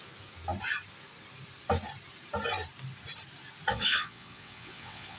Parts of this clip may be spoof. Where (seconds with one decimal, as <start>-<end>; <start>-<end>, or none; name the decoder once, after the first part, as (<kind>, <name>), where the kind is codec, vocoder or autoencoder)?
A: 3.7-5.2 (vocoder, WaveNeXt)